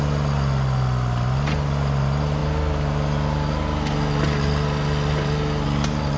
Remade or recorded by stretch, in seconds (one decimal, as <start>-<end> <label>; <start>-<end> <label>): 0.0-6.2 recorded